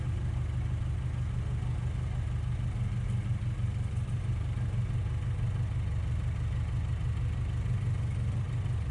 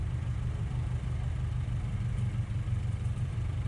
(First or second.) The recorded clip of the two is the first